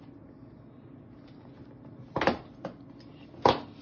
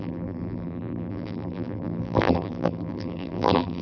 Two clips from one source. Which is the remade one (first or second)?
second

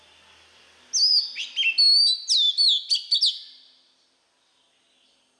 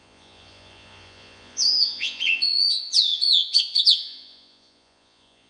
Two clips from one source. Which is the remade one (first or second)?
second